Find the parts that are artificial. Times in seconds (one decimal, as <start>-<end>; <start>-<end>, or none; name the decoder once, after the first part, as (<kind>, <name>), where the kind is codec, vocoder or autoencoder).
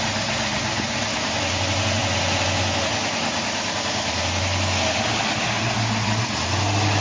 none